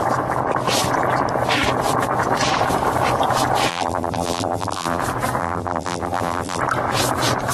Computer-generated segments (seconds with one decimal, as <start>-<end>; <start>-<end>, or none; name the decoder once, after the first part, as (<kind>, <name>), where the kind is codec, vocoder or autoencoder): 3.7-5.0 (vocoder, BigVGAN v2); 5.4-6.6